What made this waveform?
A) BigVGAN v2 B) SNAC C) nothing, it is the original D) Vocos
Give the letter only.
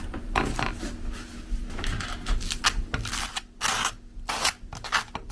C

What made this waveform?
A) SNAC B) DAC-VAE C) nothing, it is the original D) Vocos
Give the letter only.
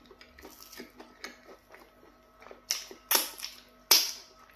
C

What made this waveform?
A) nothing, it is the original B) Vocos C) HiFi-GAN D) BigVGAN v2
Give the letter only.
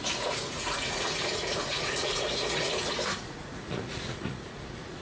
B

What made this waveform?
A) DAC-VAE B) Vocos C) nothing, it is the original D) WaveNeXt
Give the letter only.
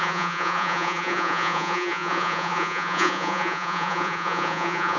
B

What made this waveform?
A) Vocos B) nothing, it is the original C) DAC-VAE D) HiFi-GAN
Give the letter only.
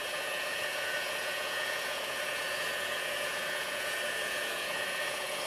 A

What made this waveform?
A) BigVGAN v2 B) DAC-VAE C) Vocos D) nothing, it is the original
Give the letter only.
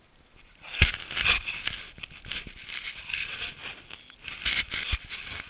D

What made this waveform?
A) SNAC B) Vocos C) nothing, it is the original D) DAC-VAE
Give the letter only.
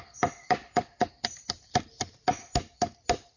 C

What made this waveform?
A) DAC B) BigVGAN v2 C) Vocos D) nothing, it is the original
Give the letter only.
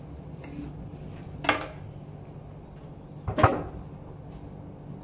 D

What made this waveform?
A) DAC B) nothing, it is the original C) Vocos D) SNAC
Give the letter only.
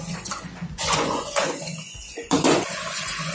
C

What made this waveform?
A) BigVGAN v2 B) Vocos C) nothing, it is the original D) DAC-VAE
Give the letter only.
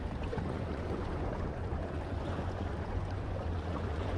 B